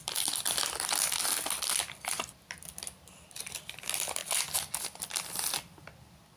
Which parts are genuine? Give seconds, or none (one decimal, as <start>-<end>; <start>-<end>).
0.0-6.4